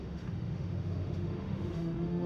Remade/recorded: remade